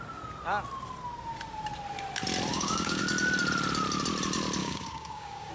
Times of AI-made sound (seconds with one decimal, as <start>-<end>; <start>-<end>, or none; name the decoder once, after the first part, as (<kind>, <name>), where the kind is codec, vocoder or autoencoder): 2.5-3.0 (codec, DAC); 4.6-5.5